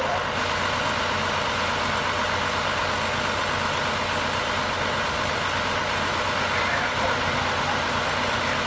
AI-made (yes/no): no